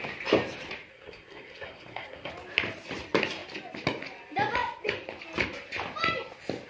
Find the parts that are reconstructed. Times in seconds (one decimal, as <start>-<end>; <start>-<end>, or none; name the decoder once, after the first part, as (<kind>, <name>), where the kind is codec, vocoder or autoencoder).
0.9-2.3 (codec, SNAC)